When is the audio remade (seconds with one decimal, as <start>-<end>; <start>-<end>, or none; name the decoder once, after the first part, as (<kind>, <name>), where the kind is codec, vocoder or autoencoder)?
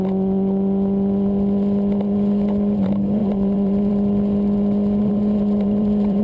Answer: 3.2-3.9 (vocoder, BigVGAN v2); 5.0-6.2